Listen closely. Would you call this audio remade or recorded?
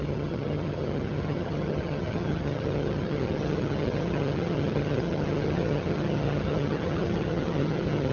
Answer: remade